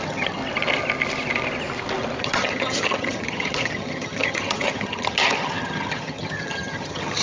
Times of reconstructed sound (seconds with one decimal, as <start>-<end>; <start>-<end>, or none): 0.0-0.4; 2.2-7.2